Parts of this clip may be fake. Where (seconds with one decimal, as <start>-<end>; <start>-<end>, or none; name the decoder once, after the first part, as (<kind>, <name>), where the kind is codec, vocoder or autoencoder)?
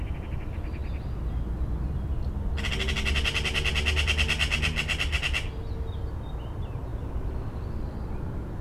none